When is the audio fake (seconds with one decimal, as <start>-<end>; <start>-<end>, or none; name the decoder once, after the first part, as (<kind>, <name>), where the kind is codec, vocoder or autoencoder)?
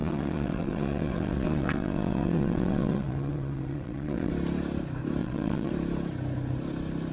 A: 0.0-4.3 (vocoder, WaveNeXt); 5.2-5.7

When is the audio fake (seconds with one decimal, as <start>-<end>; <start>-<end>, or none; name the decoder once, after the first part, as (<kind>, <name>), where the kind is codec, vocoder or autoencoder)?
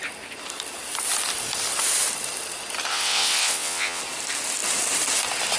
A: 2.9-4.0 (vocoder, WaveNeXt)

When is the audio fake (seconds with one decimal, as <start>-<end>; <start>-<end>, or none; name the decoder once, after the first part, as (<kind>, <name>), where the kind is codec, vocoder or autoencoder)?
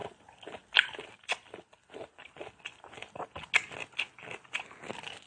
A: none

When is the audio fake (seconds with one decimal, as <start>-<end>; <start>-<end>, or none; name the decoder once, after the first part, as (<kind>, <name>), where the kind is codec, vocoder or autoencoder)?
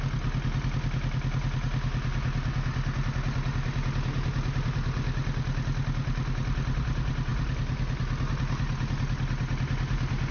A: none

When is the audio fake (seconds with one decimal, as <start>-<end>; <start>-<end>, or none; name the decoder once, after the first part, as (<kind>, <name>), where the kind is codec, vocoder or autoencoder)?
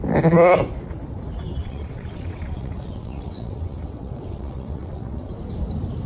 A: 1.6-5.3 (vocoder, WaveNeXt)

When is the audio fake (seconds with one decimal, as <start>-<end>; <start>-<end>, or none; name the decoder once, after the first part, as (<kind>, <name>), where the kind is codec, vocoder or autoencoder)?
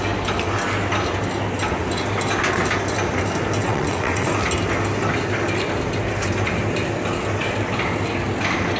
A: 3.6-4.3 (vocoder, WaveNeXt)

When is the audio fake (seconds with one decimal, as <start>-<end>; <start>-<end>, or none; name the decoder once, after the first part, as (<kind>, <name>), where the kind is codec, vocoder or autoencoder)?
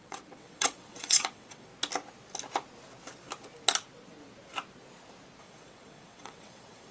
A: 0.0-1.7 (vocoder, WaveNeXt); 5.4-6.9